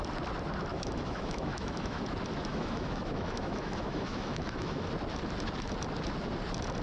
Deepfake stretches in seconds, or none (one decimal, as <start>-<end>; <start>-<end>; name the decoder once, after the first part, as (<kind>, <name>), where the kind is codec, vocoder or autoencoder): 0.7-2.0 (autoencoder, DAC-VAE); 2.5-4.9